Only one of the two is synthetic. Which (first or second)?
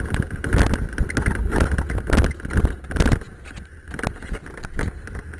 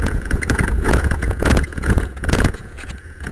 second